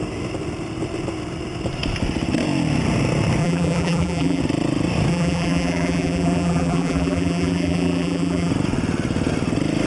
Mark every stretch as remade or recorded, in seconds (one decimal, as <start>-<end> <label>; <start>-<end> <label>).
0.0-3.4 recorded; 3.4-4.4 remade; 4.4-5.1 recorded; 5.1-8.5 remade; 8.5-9.9 recorded